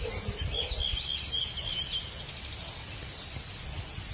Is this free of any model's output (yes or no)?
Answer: yes